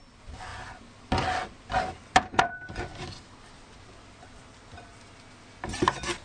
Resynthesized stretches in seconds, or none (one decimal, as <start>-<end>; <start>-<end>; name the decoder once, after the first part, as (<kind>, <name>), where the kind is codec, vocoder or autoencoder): 0.0-0.5 (vocoder, BigVGAN v2); 4.2-4.9